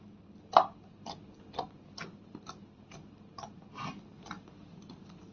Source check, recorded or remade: recorded